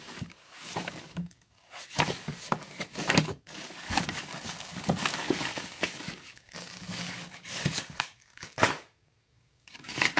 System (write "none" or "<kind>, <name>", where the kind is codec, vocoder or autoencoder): codec, DAC